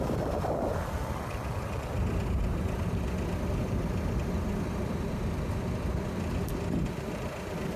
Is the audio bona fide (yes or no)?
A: yes